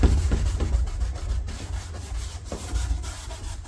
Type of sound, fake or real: real